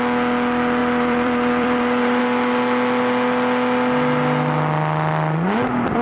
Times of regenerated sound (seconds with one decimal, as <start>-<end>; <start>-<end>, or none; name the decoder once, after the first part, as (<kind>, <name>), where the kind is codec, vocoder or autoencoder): 0.8-2.2 (vocoder, BigVGAN v2)